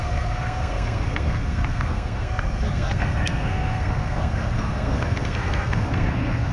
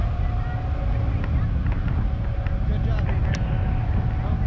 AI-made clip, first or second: first